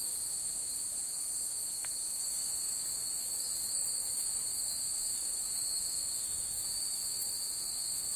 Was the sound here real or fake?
fake